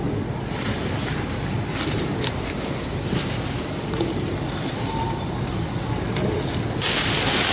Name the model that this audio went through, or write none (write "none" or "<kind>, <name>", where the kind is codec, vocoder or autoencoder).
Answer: none